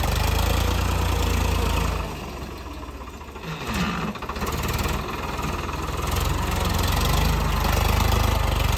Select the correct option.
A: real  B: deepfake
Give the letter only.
A